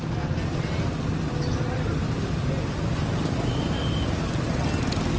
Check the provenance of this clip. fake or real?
real